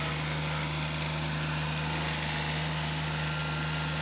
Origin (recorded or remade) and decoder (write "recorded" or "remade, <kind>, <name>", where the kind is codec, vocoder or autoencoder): recorded